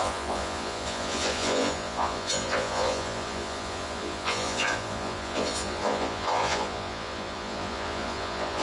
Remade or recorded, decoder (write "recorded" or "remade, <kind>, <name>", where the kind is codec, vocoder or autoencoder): remade, vocoder, Vocos